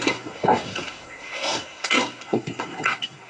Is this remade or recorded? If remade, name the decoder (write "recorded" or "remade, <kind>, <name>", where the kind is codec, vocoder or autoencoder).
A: remade, codec, SNAC